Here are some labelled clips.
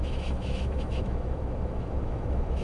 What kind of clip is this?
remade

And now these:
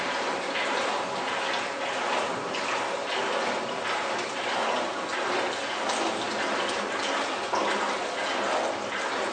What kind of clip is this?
recorded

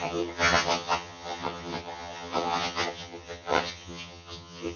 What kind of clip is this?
remade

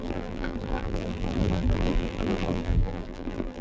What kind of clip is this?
remade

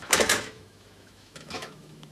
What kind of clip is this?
remade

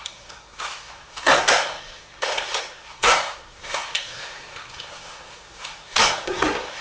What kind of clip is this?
remade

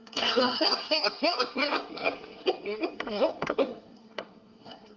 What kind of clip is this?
remade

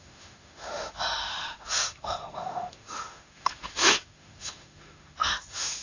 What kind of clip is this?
remade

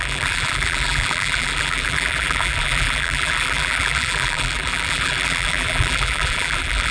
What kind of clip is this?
remade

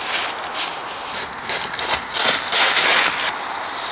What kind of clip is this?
recorded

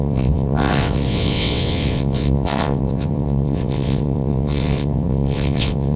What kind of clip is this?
remade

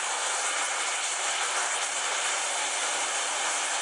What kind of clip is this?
recorded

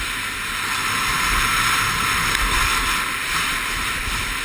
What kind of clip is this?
recorded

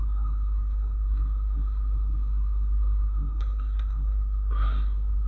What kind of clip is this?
remade